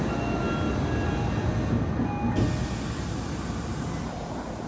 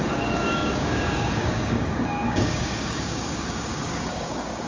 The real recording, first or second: first